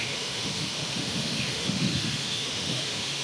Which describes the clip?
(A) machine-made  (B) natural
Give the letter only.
A